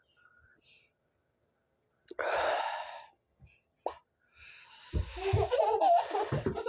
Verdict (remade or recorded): recorded